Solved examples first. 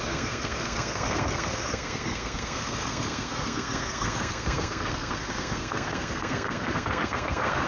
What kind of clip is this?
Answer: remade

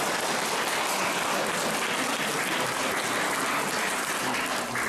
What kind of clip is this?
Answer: recorded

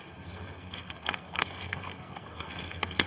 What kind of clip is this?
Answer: remade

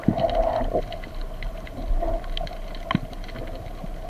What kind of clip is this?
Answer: recorded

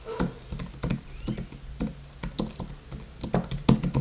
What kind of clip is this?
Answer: recorded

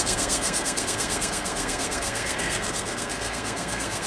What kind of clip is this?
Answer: remade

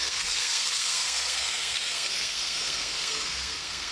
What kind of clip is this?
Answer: remade